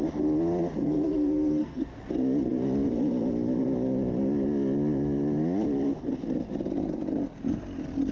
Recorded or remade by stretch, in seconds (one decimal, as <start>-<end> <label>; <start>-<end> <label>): 0.0-0.8 recorded; 0.8-2.1 remade; 2.1-8.1 recorded

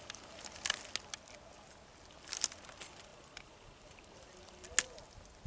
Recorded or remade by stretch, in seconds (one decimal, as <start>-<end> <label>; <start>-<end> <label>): 0.0-5.5 recorded

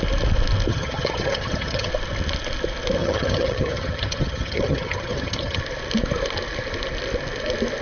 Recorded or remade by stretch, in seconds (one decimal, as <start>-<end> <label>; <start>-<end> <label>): 0.0-0.7 recorded; 0.7-1.9 remade; 1.9-3.0 recorded; 3.0-5.6 remade; 5.6-7.8 recorded

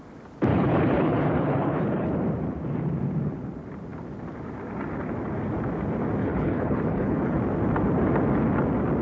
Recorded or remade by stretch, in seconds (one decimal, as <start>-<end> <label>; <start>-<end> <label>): 0.0-0.5 recorded; 0.5-2.1 remade; 2.1-6.2 recorded; 6.2-7.4 remade; 7.4-9.0 recorded

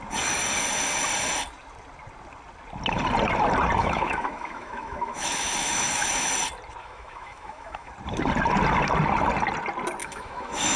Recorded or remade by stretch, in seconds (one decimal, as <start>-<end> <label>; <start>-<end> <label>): 0.0-3.8 recorded; 3.8-6.3 remade; 6.3-6.8 recorded; 6.8-7.9 remade; 7.9-10.0 recorded; 10.0-10.8 remade

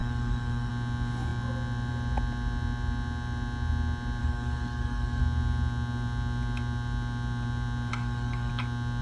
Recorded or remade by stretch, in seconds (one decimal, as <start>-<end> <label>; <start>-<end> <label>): 0.0-0.7 remade; 0.7-4.2 recorded; 4.2-5.2 remade; 5.2-7.9 recorded; 7.9-8.5 remade; 8.5-9.0 recorded